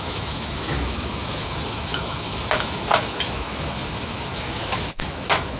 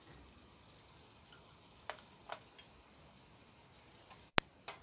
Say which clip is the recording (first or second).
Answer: second